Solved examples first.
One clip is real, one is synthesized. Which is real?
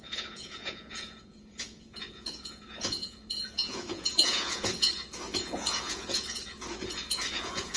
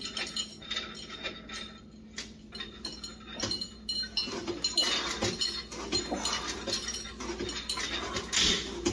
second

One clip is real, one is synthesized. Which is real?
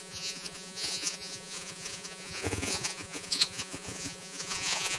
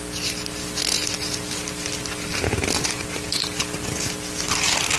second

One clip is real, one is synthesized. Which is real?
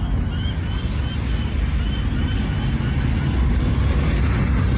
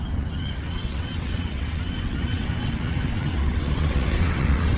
first